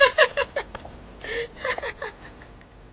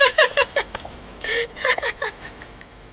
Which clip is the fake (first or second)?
second